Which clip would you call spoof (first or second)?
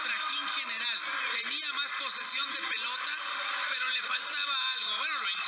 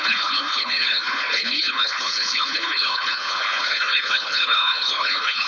second